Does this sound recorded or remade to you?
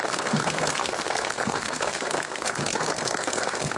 remade